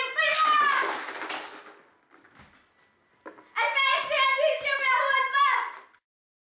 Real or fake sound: real